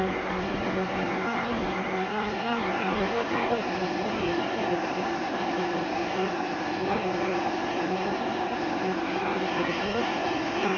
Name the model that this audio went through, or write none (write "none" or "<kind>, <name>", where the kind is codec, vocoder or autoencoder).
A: codec, SNAC